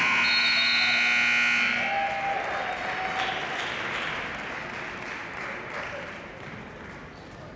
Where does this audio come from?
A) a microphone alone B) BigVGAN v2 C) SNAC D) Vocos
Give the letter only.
A